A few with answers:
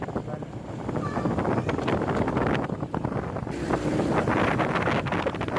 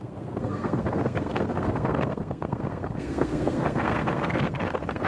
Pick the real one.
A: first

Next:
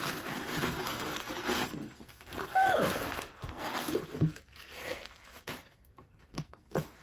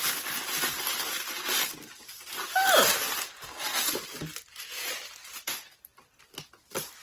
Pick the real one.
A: second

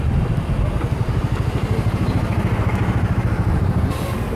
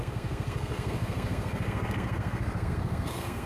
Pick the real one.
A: first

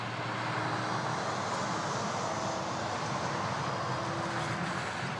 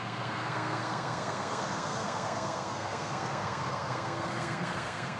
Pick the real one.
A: first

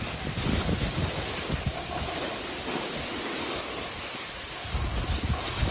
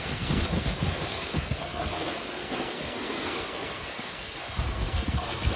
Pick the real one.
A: first